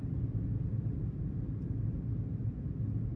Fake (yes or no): no